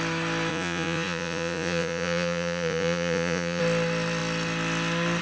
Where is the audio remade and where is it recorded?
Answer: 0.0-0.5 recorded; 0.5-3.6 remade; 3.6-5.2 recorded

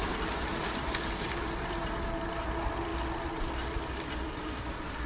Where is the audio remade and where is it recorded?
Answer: 0.0-5.1 recorded